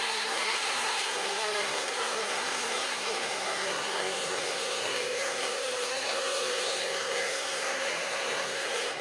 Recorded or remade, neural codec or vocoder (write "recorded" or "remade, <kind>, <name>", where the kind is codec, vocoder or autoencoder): remade, codec, SNAC